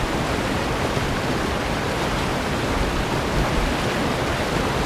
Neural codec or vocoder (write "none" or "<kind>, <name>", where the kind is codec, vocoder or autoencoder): none